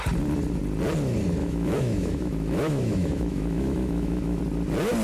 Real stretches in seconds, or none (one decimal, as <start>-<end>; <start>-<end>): 0.0-1.4; 4.4-5.0